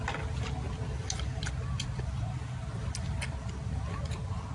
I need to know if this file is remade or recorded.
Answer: recorded